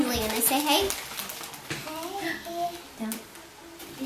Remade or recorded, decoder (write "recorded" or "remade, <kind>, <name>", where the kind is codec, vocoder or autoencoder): recorded